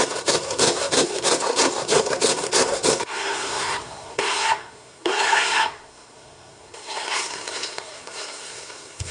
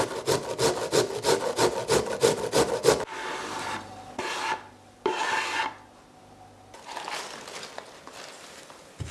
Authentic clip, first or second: second